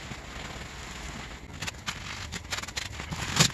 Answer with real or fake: real